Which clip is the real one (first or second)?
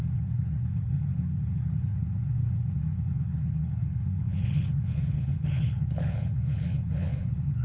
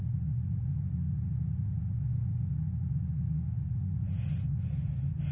second